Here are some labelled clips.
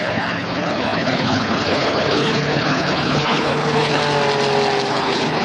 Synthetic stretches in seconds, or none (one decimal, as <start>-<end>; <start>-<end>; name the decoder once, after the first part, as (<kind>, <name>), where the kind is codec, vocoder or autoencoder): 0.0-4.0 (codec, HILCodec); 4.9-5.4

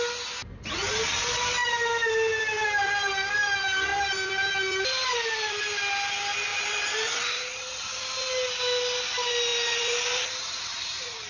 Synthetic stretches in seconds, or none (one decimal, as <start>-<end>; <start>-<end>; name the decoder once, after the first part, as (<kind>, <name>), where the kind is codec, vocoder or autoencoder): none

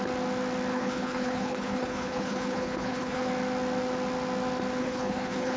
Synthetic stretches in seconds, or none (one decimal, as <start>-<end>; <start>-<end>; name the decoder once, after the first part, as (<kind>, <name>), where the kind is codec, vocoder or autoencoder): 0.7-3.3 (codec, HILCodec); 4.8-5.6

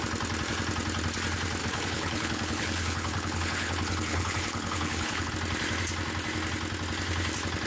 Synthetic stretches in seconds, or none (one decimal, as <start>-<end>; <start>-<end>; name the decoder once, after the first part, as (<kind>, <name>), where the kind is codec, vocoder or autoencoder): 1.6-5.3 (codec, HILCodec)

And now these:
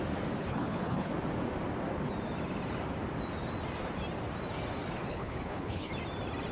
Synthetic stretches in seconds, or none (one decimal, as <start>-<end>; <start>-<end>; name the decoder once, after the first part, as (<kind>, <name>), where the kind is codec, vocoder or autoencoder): 0.4-1.1 (codec, HILCodec); 5.1-5.9

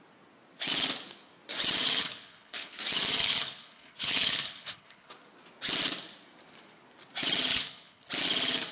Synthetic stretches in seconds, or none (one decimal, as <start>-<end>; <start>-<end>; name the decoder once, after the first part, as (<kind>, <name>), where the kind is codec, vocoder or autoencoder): 2.0-2.8 (codec, HILCodec); 3.2-5.1; 7.5-8.1